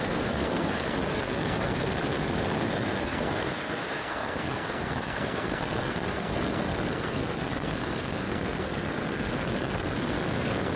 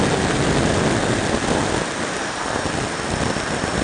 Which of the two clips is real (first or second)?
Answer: second